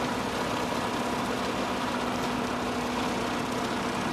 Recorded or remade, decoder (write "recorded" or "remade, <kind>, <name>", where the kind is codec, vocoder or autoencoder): recorded